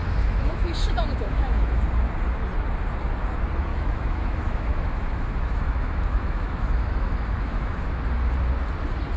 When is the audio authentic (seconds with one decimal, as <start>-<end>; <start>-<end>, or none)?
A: 1.8-3.7; 7.9-9.2